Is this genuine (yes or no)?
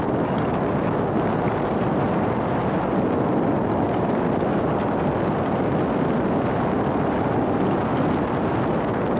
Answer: yes